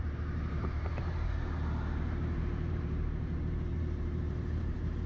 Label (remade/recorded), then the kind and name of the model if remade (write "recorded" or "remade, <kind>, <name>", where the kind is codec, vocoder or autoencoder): remade, vocoder, BigVGAN v2